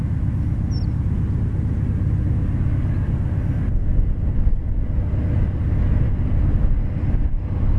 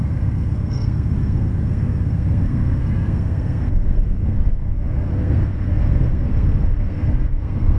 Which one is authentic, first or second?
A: first